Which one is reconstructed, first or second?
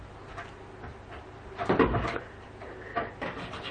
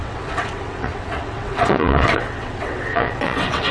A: second